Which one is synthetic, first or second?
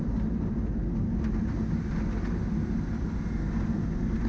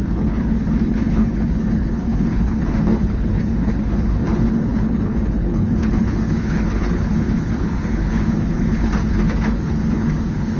second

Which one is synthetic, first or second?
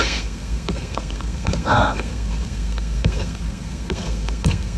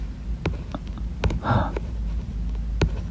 first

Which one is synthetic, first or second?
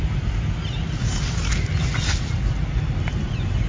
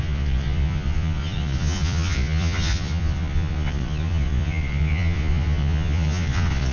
second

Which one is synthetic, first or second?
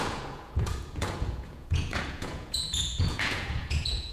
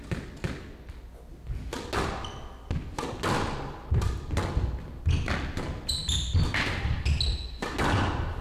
first